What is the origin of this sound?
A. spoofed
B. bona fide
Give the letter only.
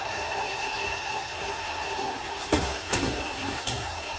A